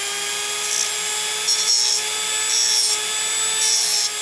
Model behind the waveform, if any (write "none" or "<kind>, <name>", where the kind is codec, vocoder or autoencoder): none